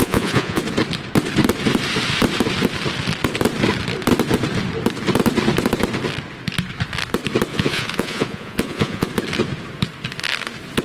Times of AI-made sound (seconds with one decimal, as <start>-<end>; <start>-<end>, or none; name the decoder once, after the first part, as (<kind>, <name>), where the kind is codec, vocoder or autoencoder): 0.0-0.6 (vocoder, Vocos); 7.5-9.1